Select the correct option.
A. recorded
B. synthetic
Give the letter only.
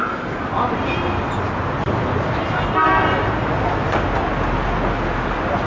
A